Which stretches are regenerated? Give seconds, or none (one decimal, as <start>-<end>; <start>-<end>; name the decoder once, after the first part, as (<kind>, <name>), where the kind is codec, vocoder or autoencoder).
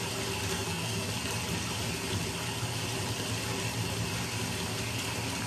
0.5-1.1 (codec, SNAC)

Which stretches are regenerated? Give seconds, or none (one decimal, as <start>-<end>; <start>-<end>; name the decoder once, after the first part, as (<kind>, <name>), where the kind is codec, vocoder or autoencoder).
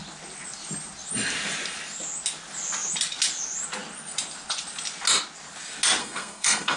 6.0-6.8 (codec, SNAC)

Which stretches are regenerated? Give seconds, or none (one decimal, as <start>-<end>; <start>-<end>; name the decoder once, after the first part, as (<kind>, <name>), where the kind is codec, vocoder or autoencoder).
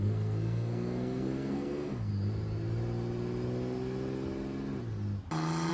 0.0-2.1 (codec, SNAC)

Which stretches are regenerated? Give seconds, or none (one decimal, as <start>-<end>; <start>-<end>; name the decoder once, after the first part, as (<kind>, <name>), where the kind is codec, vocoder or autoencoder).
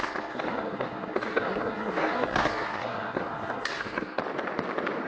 0.0-4.2 (codec, SNAC)